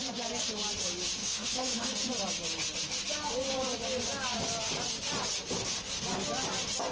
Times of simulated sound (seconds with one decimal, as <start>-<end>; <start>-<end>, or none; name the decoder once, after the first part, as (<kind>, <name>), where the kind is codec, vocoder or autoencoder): 1.2-1.9 (autoencoder, DAC-VAE)

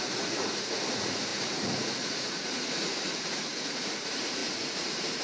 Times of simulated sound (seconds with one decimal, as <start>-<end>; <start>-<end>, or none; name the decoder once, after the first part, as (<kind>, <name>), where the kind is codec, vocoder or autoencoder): 0.0-5.2 (vocoder, Vocos)